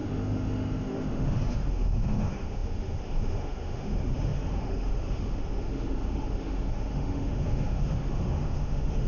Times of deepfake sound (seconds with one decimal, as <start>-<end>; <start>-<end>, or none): 0.0-9.1